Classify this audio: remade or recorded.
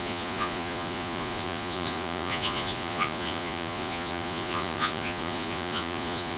remade